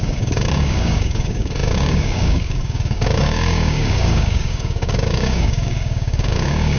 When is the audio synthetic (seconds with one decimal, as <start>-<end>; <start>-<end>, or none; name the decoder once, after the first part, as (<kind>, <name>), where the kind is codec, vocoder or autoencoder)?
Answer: 0.0-6.8 (codec, DAC)